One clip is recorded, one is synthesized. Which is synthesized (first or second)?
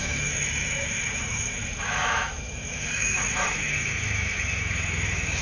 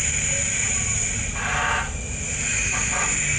first